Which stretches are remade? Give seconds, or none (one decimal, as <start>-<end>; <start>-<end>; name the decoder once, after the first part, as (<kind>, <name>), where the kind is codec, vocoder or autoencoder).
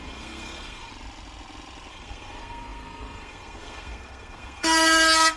0.0-0.9 (codec, SNAC); 1.9-5.4